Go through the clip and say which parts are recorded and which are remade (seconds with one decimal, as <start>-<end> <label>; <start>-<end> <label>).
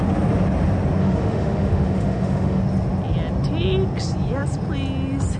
0.0-1.0 recorded; 1.0-2.6 remade; 2.6-5.4 recorded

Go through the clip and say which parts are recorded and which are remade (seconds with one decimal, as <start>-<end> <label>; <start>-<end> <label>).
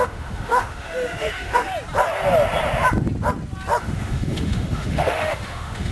0.0-1.7 remade; 1.7-3.8 recorded; 3.8-5.9 remade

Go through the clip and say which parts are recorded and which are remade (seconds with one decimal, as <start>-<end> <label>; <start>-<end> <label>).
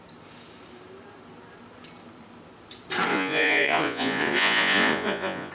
0.0-3.1 recorded; 3.1-5.5 remade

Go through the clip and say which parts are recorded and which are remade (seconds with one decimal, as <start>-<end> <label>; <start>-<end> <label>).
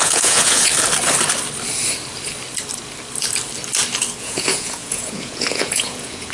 0.0-0.7 remade; 0.7-4.2 recorded; 4.2-6.3 remade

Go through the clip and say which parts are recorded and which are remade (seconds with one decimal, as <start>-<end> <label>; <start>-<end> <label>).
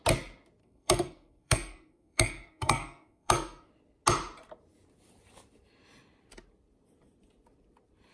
0.0-0.6 recorded; 0.6-3.7 remade; 3.7-8.1 recorded